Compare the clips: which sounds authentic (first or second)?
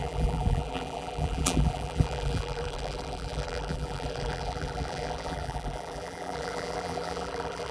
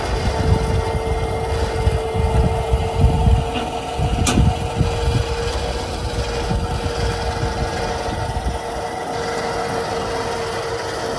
second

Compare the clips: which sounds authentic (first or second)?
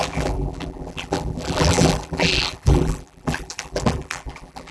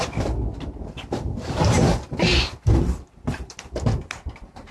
second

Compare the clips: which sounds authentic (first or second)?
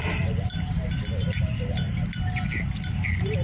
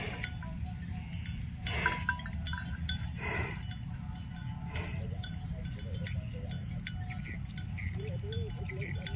second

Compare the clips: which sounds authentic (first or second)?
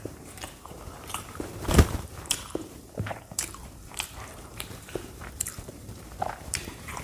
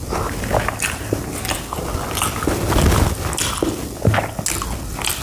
second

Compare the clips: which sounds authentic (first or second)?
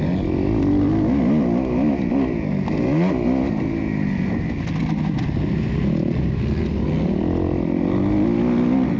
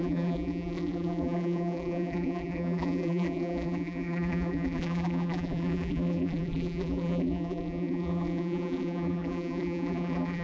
first